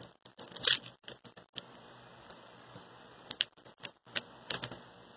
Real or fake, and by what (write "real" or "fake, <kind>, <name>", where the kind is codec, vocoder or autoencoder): real